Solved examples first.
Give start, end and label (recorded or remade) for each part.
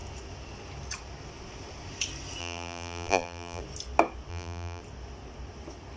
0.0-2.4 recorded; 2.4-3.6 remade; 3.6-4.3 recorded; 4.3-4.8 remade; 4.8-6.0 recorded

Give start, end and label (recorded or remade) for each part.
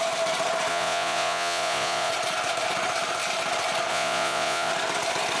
0.0-0.7 recorded; 0.7-2.1 remade; 2.1-3.9 recorded; 3.9-4.7 remade; 4.7-5.4 recorded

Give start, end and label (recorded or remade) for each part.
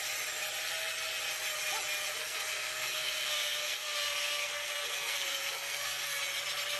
0.0-2.1 recorded; 2.1-6.2 remade; 6.2-6.8 recorded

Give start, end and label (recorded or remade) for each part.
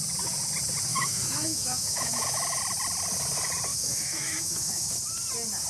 0.0-0.9 recorded; 0.9-2.6 remade; 2.6-3.7 recorded; 3.7-4.9 remade; 4.9-5.7 recorded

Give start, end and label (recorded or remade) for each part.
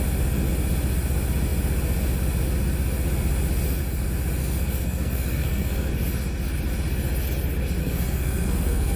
0.0-4.4 recorded; 4.4-5.9 remade; 5.9-7.8 recorded; 7.8-9.0 remade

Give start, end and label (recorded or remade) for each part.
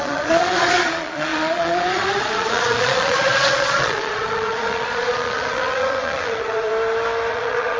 0.0-6.7 remade; 6.7-7.3 recorded; 7.3-7.8 remade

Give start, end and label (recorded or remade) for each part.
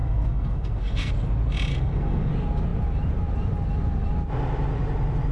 0.0-1.1 remade; 1.1-1.7 recorded; 1.7-2.3 remade; 2.3-5.3 recorded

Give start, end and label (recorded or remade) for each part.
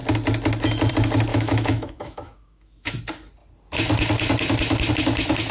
0.0-1.3 recorded; 1.3-3.0 remade; 3.0-5.5 recorded